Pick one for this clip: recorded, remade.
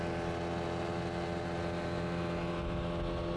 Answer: recorded